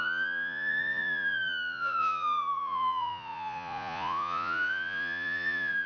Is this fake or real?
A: fake